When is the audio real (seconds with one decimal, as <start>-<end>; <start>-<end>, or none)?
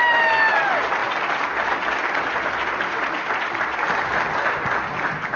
0.0-1.0; 4.0-5.4